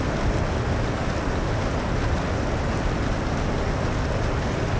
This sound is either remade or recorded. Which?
recorded